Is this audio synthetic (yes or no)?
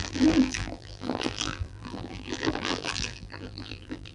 yes